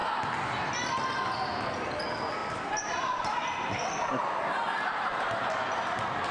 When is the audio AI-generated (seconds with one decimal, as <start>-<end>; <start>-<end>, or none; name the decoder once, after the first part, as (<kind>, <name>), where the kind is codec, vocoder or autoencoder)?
2.4-5.4 (vocoder, BigVGAN v2)

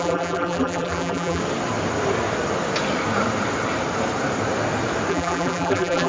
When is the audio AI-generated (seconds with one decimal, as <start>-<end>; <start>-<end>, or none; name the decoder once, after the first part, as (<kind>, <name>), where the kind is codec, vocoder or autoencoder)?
0.0-1.4 (vocoder, BigVGAN v2); 5.1-6.1

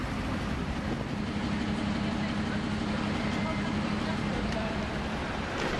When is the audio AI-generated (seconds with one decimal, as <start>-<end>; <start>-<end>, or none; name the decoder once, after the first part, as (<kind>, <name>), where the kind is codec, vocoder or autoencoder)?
3.2-3.9 (vocoder, BigVGAN v2); 4.3-5.8

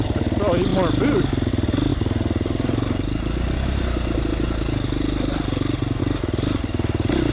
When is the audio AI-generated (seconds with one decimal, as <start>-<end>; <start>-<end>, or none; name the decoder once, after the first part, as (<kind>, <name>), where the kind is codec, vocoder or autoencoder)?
none

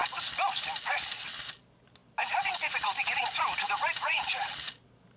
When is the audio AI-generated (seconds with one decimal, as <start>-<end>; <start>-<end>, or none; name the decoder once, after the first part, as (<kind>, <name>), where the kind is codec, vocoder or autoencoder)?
0.0-2.0 (vocoder, BigVGAN v2)